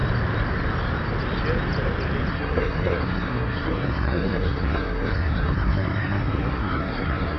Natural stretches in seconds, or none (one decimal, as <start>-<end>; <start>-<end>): 0.0-2.3